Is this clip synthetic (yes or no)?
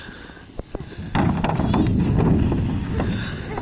no